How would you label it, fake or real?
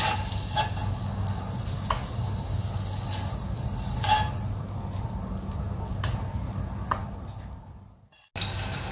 real